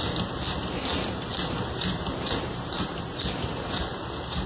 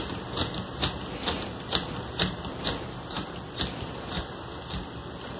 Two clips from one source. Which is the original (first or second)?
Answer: second